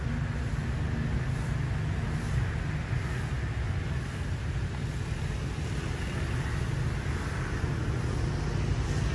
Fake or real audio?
real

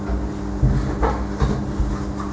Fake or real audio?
real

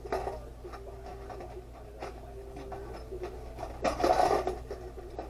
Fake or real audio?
real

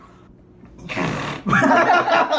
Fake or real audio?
real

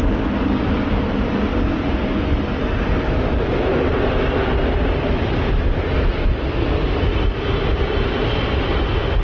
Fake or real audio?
real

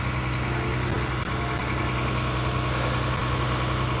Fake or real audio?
real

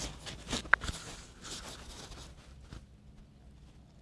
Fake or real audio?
real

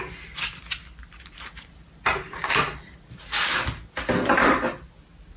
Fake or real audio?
real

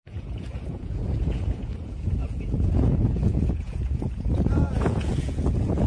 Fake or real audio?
fake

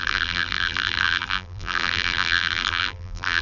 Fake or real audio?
fake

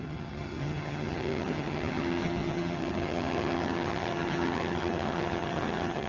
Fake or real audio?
fake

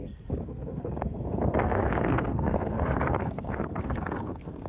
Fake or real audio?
fake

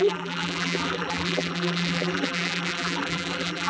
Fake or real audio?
fake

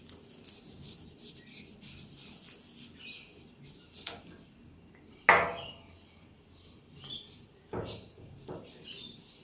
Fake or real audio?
real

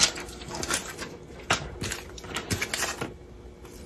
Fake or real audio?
real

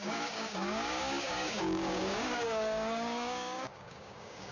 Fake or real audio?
fake